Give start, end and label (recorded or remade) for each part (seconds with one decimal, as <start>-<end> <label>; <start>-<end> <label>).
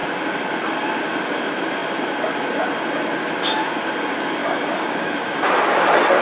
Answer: 0.0-4.4 recorded; 4.4-5.5 remade; 5.5-6.2 recorded